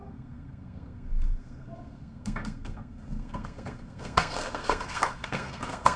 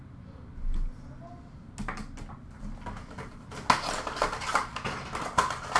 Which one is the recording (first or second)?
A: second